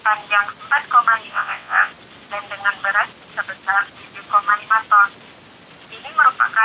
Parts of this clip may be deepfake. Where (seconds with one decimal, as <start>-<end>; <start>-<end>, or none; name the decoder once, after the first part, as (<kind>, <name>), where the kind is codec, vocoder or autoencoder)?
1.3-1.9 (vocoder, WaveNeXt)